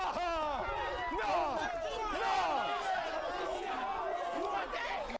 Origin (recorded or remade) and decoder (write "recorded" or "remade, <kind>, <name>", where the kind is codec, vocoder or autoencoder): recorded